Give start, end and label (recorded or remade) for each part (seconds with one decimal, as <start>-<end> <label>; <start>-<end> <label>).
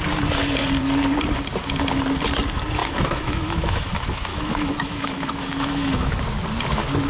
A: 0.0-2.8 recorded; 2.8-3.9 remade; 3.9-4.3 recorded; 4.3-6.2 remade; 6.2-7.1 recorded